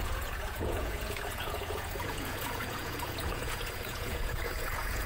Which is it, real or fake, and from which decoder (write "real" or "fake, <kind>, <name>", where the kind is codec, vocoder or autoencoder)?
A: fake, vocoder, Vocos